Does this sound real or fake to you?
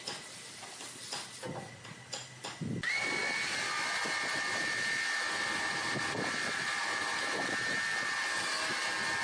real